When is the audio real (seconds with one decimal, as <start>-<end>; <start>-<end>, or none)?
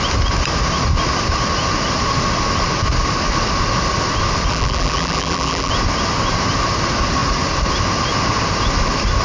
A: 0.0-4.5; 5.7-9.2